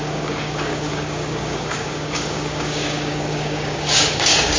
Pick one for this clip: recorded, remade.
remade